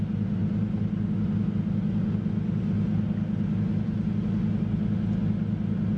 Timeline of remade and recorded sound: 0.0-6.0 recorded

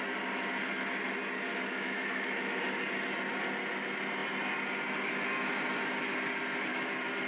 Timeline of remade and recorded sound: 0.0-1.5 recorded; 1.5-2.6 remade; 2.6-6.7 recorded; 6.7-7.3 remade

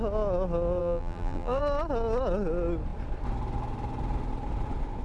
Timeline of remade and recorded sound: 0.0-0.8 recorded; 0.8-1.6 remade; 1.6-5.0 recorded